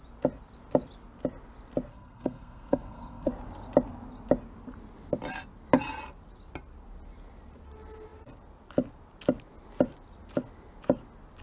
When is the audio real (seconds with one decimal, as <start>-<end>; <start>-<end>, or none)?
0.0-1.9; 3.3-11.4